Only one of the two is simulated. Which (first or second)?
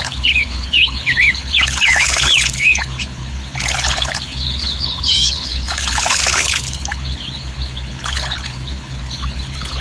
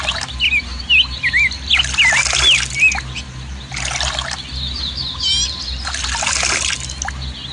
first